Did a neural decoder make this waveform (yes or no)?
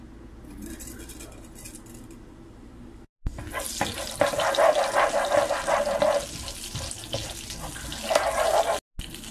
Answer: no